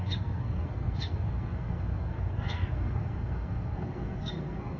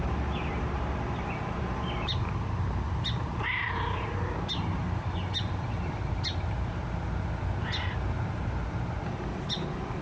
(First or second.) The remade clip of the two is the first